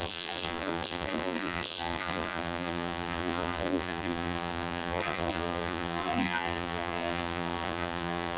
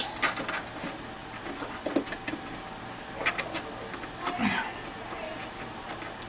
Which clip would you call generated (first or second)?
first